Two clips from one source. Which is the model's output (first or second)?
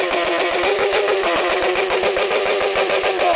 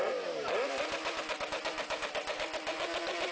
first